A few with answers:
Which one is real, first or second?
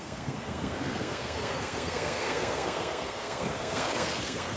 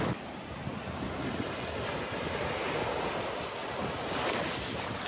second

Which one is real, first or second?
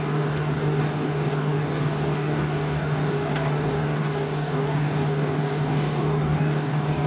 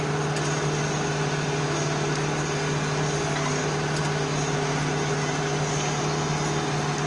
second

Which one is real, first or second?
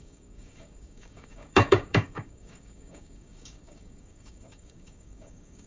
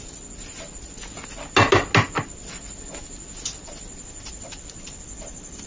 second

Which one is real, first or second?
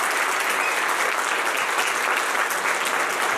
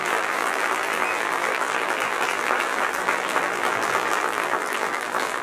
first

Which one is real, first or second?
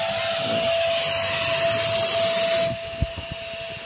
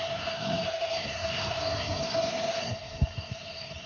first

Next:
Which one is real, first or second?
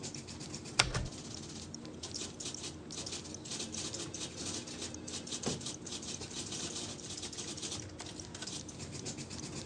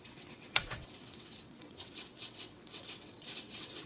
first